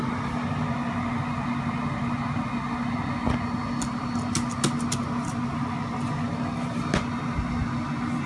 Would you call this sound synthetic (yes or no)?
no